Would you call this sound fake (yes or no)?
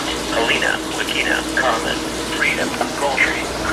no